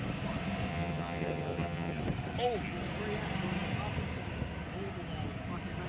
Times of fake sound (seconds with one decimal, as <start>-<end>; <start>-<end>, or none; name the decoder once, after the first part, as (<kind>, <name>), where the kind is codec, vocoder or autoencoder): 0.7-2.0 (vocoder, HiFi-GAN)